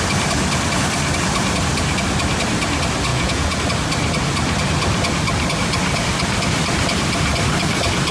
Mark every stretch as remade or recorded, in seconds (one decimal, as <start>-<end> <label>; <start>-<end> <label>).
0.0-3.1 recorded; 3.1-3.6 remade; 3.6-8.1 recorded